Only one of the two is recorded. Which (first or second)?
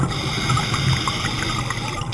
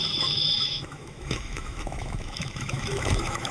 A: first